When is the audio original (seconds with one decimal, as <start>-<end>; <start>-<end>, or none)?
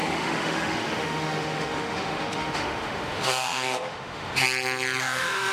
4.3-5.0